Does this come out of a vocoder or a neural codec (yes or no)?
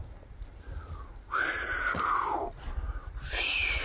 no